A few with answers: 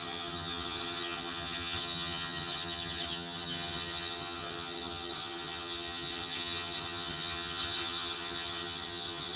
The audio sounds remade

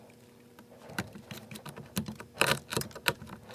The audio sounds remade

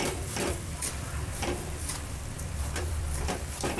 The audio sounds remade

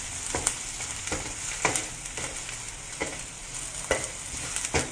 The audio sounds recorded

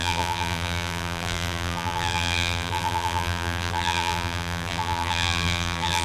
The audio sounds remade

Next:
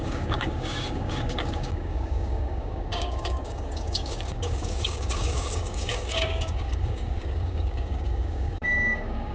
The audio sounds remade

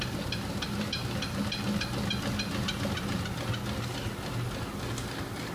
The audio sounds recorded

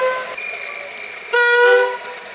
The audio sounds recorded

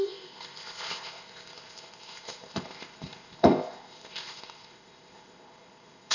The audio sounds remade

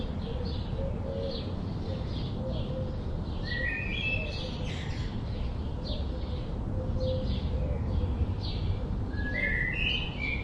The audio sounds recorded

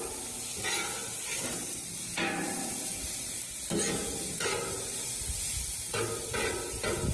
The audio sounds recorded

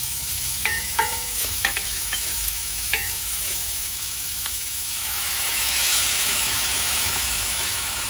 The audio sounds remade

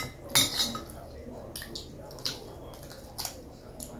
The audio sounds recorded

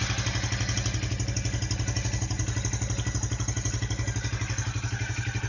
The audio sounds recorded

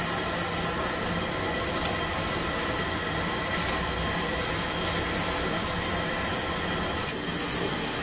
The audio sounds recorded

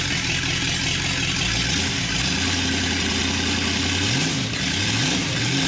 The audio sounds recorded